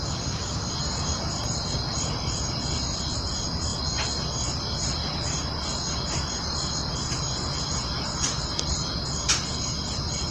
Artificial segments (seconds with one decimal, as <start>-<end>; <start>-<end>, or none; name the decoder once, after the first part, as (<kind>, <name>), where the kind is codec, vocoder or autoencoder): 0.0-3.7 (vocoder, BigVGAN v2); 8.7-10.3